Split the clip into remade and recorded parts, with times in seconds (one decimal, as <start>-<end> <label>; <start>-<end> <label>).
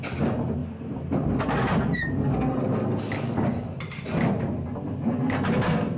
0.0-3.5 recorded; 3.5-4.1 remade; 4.1-6.0 recorded